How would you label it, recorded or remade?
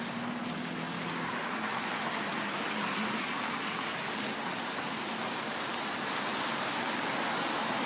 recorded